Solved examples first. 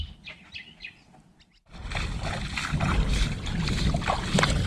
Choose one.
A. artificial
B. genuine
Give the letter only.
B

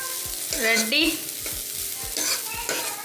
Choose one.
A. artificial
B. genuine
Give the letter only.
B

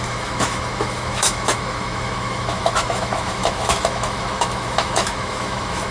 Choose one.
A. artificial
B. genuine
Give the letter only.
A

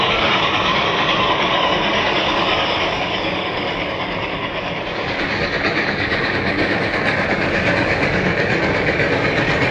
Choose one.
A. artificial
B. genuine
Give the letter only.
A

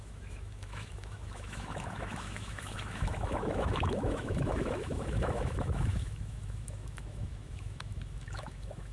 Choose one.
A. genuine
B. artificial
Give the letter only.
B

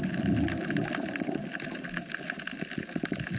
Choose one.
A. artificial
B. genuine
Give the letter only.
B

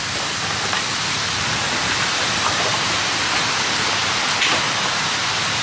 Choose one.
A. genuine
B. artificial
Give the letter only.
A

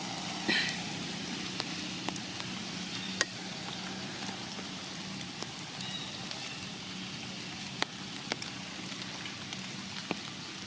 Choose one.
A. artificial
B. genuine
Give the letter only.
B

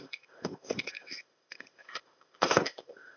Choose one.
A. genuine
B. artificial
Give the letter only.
B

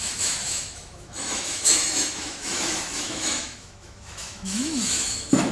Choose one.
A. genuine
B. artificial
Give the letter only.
B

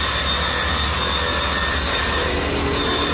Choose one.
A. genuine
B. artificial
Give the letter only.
A